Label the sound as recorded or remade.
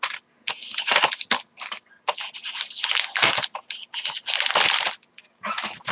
recorded